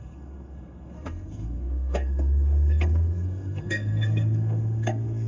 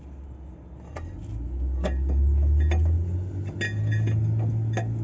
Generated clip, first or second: first